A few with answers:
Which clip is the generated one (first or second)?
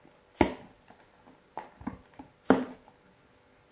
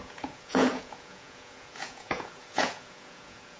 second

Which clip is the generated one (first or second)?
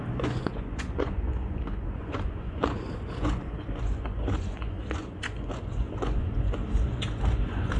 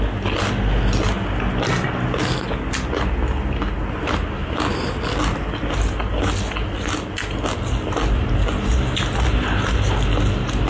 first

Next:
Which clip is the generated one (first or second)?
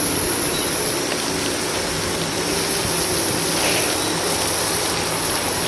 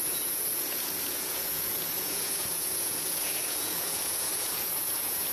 second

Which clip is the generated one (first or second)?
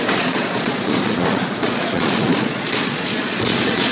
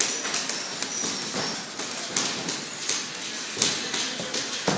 first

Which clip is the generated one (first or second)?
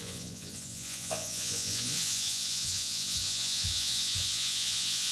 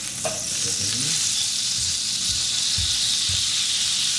first